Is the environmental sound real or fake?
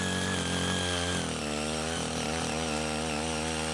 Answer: real